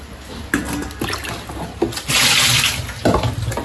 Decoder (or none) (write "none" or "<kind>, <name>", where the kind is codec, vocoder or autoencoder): none